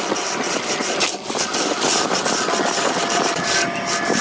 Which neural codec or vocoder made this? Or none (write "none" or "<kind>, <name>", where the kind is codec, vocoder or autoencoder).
none